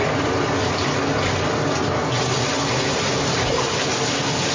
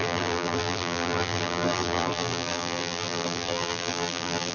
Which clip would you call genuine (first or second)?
first